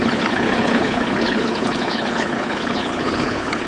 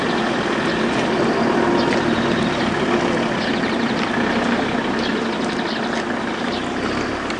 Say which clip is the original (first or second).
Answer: second